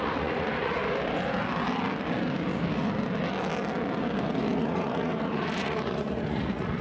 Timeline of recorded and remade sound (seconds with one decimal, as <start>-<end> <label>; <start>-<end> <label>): 0.0-0.8 remade; 0.8-4.6 recorded; 4.6-6.8 remade

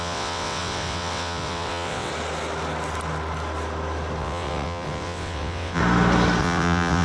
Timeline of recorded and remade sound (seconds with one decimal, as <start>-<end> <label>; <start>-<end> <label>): 0.0-2.1 remade; 2.1-4.2 recorded; 4.2-5.8 remade; 5.8-6.4 recorded; 6.4-7.0 remade

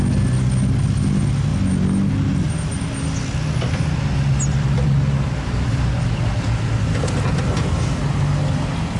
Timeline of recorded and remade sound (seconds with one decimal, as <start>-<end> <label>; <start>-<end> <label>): 0.0-4.5 recorded; 4.5-5.9 remade; 5.9-9.0 recorded

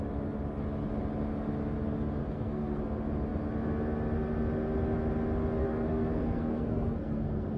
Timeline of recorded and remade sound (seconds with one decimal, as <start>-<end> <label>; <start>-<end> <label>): 0.0-2.2 recorded; 2.2-2.8 remade; 2.8-5.6 recorded; 5.6-7.6 remade

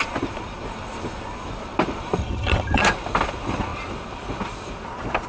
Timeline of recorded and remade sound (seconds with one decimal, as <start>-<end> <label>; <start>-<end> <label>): 0.0-2.2 recorded; 2.2-2.8 remade; 2.8-5.3 recorded

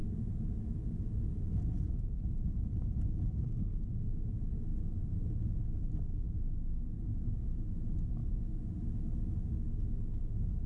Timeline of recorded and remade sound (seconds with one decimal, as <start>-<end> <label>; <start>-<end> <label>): 0.0-3.9 remade; 3.9-10.7 recorded